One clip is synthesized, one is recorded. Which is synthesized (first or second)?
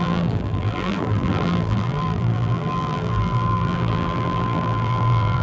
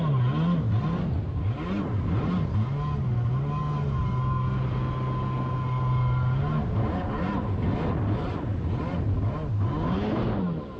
first